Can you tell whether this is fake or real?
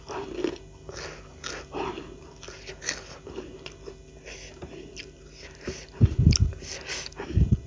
real